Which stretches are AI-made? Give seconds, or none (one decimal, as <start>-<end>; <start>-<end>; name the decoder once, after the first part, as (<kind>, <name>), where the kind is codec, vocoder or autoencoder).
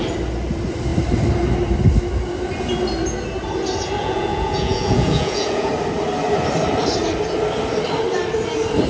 4.0-5.7 (vocoder, Vocos)